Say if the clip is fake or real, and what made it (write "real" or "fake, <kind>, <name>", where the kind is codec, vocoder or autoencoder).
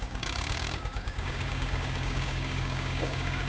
fake, codec, DAC